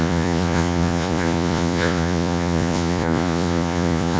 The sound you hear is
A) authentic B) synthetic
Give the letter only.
B